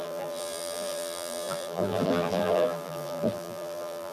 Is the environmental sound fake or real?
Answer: fake